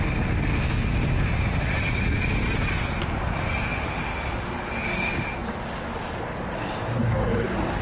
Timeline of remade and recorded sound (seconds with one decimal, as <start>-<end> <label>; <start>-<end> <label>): 0.0-7.8 recorded